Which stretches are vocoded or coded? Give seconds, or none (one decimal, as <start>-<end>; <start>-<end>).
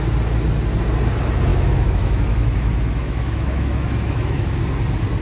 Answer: 1.5-4.6